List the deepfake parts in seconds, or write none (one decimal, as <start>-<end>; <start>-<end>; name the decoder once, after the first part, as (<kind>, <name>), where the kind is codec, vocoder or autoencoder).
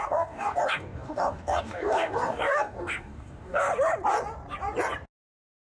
0.0-3.7 (codec, DAC); 5.3-5.7